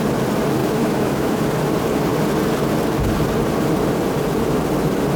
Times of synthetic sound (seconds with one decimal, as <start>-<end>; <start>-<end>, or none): 0.6-1.4